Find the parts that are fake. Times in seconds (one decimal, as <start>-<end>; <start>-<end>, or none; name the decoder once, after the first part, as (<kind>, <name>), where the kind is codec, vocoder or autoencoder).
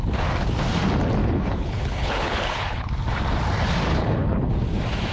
1.2-2.9 (codec, HILCodec); 3.9-4.5